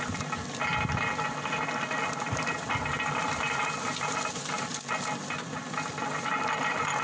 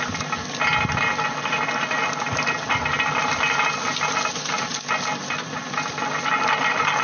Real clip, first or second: second